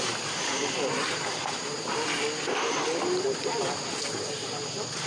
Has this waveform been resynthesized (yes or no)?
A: no